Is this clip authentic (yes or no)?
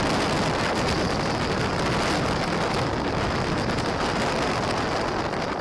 yes